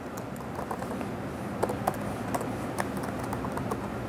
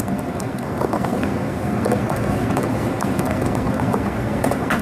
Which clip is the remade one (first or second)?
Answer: second